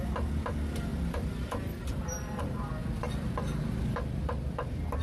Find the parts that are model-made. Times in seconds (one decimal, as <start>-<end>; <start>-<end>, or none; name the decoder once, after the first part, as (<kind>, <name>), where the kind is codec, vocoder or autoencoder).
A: 0.9-2.4 (vocoder, BigVGAN v2); 2.8-3.6